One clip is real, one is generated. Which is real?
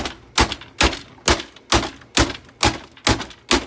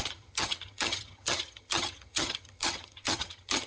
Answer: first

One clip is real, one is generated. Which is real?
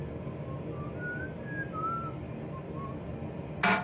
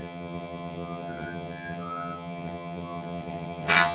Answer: first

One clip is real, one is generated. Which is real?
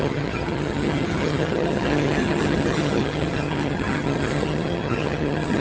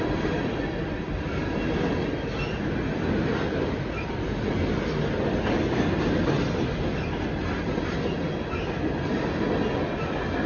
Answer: second